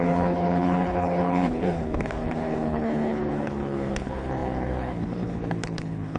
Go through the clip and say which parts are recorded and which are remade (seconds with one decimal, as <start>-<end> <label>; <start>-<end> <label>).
0.0-6.2 remade